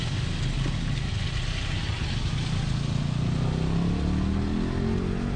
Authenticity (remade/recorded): recorded